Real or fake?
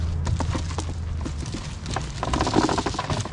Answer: real